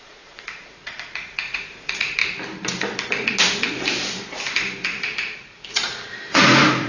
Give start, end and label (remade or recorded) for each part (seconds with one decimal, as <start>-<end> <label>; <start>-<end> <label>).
0.0-2.2 remade; 2.2-6.3 recorded; 6.3-6.9 remade